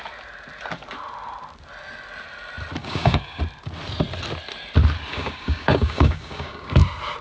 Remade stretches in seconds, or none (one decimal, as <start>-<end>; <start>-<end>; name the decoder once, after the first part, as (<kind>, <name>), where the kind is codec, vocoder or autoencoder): 2.8-3.4 (codec, DAC); 5.1-6.8